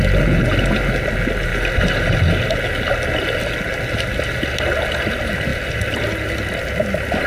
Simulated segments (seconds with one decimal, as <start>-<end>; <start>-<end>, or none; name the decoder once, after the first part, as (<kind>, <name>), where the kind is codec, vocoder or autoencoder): none